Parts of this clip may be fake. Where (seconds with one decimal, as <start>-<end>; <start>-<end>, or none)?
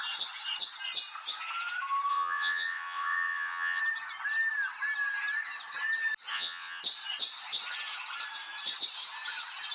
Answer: 2.1-3.8; 6.3-6.8